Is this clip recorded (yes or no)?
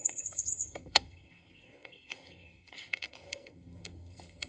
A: no